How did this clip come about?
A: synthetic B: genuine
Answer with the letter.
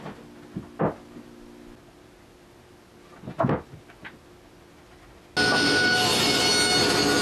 B